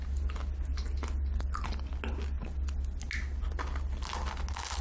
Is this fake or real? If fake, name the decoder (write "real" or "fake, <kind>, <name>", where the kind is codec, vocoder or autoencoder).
real